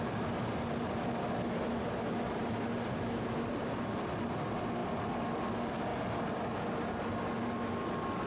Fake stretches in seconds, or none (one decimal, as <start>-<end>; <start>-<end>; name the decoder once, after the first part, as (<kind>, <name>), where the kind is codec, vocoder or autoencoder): none